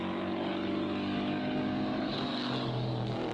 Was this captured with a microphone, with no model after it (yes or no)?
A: no